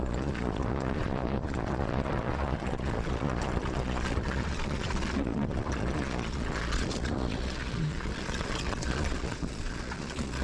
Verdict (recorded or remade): remade